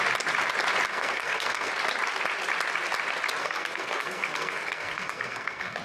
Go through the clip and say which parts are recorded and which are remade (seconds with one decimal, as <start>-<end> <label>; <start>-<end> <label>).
0.0-0.9 recorded; 0.9-1.7 remade; 1.7-3.4 recorded; 3.4-5.8 remade

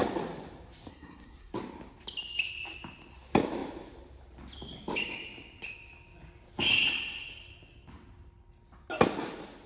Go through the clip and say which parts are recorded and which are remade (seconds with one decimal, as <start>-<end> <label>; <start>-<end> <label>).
0.0-0.9 recorded; 0.9-1.5 remade; 1.5-9.7 recorded